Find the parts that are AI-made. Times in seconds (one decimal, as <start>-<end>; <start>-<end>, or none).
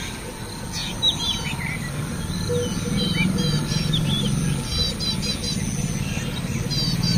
none